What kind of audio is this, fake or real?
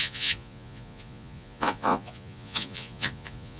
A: fake